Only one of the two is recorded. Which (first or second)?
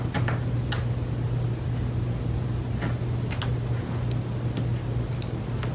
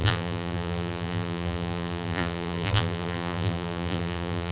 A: first